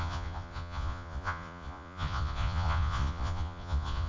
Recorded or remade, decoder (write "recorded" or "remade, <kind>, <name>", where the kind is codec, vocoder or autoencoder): remade, vocoder, Vocos